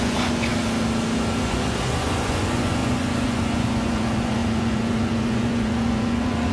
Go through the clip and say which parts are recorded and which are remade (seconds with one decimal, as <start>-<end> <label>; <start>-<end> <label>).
0.0-0.5 remade; 0.5-1.4 recorded; 1.4-6.5 remade